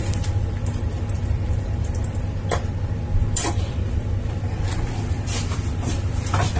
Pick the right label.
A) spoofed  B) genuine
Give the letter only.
A